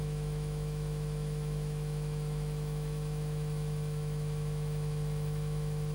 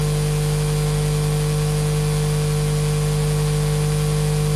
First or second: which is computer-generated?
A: first